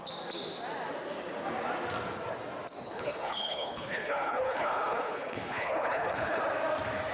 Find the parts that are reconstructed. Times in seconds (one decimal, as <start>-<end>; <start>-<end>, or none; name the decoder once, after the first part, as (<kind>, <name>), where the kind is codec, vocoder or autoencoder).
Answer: 2.8-6.4 (codec, HILCodec)